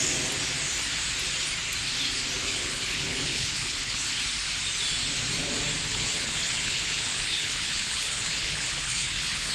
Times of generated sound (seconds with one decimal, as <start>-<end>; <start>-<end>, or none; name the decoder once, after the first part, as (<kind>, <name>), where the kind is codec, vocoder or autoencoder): 2.4-4.1 (codec, HILCodec); 5.9-9.5